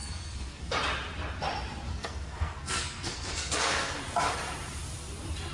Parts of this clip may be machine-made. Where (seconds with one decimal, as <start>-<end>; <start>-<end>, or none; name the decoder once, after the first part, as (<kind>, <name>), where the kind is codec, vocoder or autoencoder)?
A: 0.0-0.7 (codec, SNAC); 1.9-4.0